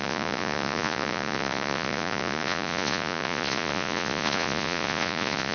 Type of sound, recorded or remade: remade